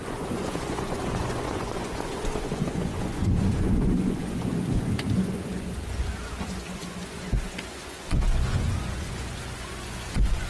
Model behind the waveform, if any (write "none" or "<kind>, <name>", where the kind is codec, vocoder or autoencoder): vocoder, Vocos